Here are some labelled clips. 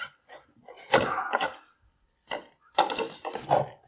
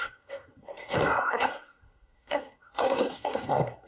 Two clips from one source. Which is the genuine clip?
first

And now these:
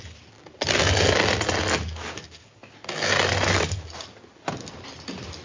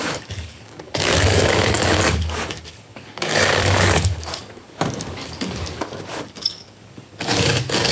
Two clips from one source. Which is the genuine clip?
first